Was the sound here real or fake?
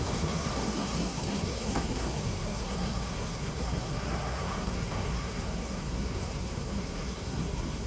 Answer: fake